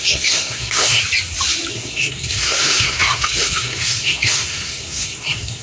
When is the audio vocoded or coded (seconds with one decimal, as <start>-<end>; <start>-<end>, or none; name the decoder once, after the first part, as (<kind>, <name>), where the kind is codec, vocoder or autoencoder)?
0.0-1.0 (codec, SNAC); 1.7-5.6